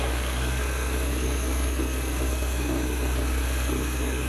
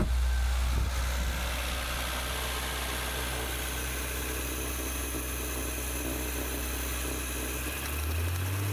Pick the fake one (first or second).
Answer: first